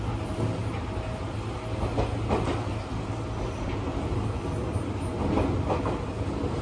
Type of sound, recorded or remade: recorded